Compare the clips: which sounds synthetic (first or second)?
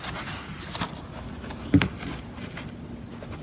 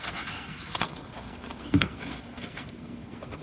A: second